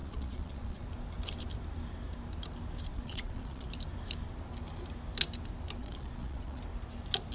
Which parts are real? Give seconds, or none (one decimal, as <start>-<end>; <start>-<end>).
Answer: 0.8-2.9; 3.7-5.8; 6.6-7.3